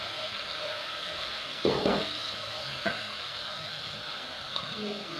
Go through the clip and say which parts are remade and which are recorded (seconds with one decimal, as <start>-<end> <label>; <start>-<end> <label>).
0.0-5.2 remade